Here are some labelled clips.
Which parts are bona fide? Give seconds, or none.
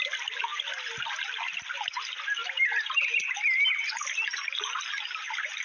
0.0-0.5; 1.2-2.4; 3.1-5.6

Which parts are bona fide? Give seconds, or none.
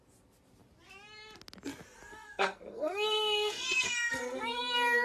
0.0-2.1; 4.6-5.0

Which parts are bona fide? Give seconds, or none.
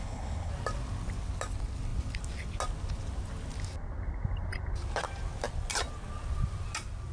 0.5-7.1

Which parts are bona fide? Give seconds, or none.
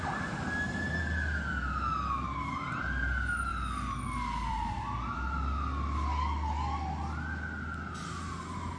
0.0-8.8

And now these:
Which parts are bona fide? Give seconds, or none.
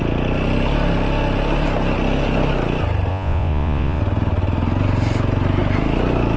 0.0-3.1; 4.0-6.4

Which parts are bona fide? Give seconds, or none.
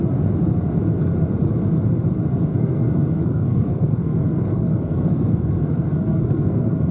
0.0-2.5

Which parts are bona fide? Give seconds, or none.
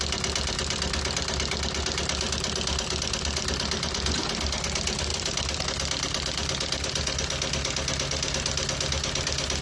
0.0-9.6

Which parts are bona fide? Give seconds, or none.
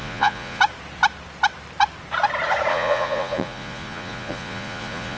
0.6-2.7